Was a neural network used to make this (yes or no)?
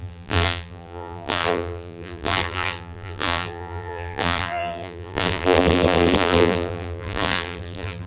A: yes